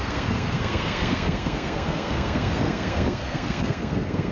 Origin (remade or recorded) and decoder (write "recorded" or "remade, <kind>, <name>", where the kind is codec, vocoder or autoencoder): remade, codec, SNAC